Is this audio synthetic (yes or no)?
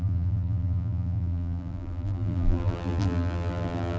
yes